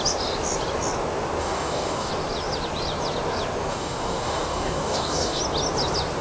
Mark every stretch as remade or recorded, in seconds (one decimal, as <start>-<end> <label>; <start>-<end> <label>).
0.0-1.4 recorded; 1.4-2.1 remade; 2.1-3.7 recorded; 3.7-5.4 remade; 5.4-6.2 recorded